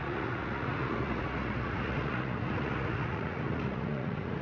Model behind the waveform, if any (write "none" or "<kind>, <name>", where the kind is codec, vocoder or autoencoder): vocoder, Vocos